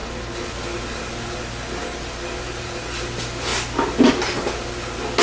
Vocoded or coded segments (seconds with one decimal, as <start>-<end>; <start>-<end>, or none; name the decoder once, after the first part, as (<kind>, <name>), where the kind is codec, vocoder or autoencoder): none